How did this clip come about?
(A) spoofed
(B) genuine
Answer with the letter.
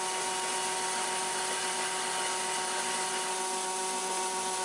B